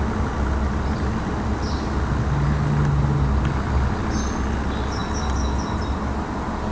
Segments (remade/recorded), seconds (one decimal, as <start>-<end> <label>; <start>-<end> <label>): 0.0-6.7 recorded